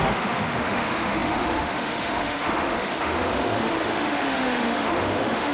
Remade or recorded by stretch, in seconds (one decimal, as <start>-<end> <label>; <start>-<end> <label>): 0.0-5.5 remade